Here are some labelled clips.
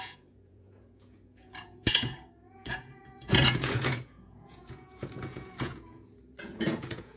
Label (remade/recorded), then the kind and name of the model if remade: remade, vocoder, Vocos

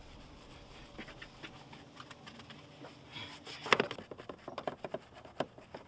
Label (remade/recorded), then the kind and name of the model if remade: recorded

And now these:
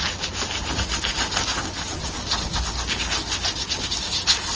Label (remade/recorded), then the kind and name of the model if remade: recorded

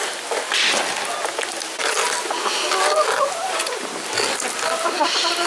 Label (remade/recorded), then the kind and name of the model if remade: recorded